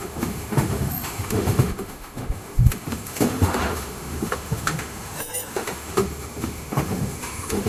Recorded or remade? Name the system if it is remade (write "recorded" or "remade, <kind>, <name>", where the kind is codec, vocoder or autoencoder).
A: remade, autoencoder, DAC-VAE